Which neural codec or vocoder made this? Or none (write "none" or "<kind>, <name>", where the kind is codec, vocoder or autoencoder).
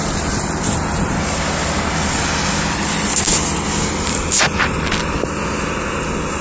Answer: none